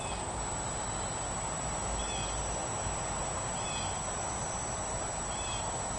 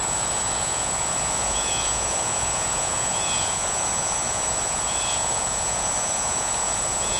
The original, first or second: first